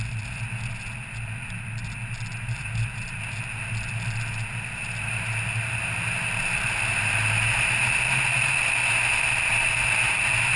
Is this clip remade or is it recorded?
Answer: recorded